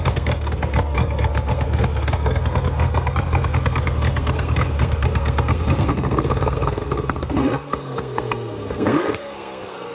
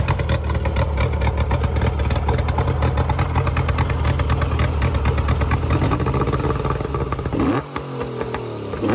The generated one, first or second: first